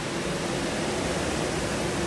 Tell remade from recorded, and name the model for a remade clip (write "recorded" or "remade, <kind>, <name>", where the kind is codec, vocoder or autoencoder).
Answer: recorded